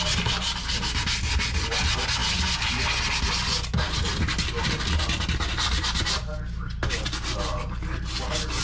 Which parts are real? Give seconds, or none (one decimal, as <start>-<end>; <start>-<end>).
0.0-8.6

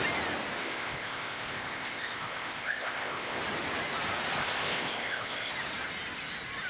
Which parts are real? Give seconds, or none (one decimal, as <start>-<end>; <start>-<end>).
0.0-0.6; 3.4-4.4; 5.5-6.7

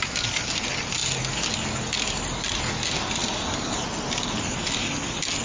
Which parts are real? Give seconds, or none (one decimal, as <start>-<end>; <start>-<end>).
0.0-5.4